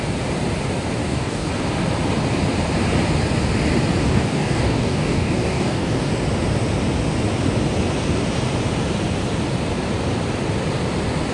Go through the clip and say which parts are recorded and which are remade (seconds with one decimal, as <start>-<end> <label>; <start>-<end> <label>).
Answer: 0.0-1.0 recorded; 1.0-1.5 remade; 1.5-4.0 recorded; 4.0-6.1 remade; 6.1-11.3 recorded

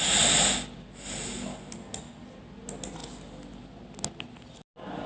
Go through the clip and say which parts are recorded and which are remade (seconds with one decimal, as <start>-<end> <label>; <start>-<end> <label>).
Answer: 0.0-5.1 recorded

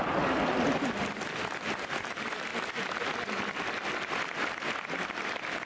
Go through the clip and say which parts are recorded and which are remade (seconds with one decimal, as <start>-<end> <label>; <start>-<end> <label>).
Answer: 0.0-5.7 recorded